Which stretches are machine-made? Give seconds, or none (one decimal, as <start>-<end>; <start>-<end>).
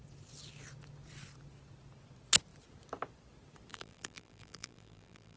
3.7-5.4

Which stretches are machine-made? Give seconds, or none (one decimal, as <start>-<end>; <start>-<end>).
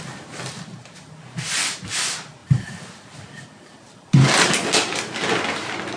none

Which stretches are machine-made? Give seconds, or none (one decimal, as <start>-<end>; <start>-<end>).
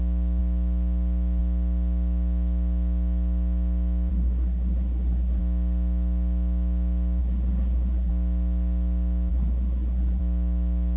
4.1-5.4; 7.2-8.1; 9.3-10.2